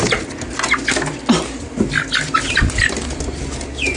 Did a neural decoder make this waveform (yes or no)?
no